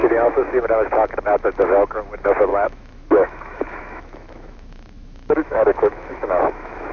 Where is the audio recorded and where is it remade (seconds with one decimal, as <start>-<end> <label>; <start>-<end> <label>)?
0.0-0.9 remade; 0.9-2.5 recorded; 2.5-6.9 remade